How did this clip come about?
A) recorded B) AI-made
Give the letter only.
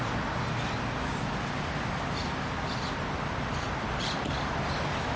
A